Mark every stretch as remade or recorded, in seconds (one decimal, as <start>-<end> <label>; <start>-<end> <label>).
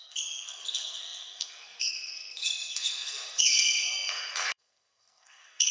0.0-5.7 remade